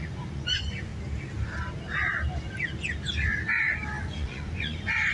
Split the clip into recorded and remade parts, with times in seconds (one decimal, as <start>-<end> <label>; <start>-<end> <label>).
0.0-0.9 remade; 0.9-4.0 recorded; 4.0-5.1 remade